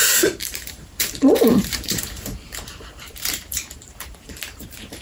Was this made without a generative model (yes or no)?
no